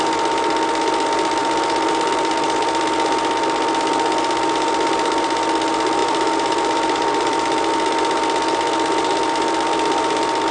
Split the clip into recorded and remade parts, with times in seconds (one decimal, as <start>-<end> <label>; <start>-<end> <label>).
0.0-6.0 recorded; 6.0-7.7 remade; 7.7-10.5 recorded